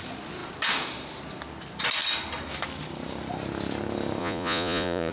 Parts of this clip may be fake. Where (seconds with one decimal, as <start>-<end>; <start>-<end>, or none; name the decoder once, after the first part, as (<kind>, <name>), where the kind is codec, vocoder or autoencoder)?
4.2-5.1 (vocoder, Vocos)